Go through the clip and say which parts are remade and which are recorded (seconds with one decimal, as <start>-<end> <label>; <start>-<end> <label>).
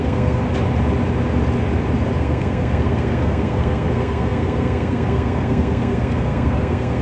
0.0-0.4 remade; 0.4-2.2 recorded; 2.2-7.0 remade